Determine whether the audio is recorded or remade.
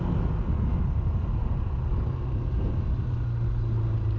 recorded